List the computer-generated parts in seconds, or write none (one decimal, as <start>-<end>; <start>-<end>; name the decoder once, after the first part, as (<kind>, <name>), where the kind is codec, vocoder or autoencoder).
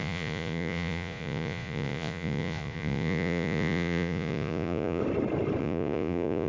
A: 0.0-5.0 (vocoder, Vocos); 5.6-6.5